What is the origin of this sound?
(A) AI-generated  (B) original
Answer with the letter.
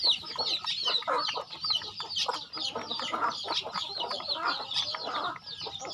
B